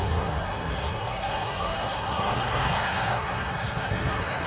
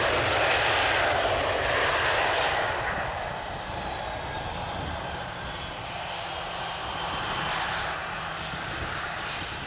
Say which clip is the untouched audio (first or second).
second